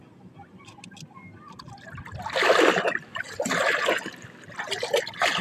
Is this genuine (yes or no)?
yes